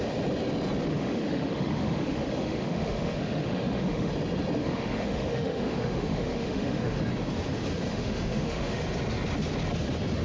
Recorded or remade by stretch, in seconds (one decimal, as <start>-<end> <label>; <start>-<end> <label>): 0.0-0.9 recorded; 0.9-4.1 remade; 4.1-4.6 recorded; 4.6-7.0 remade; 7.0-7.9 recorded; 7.9-8.8 remade; 8.8-10.2 recorded